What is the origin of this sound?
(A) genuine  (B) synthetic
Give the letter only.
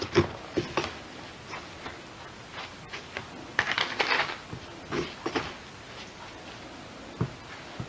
A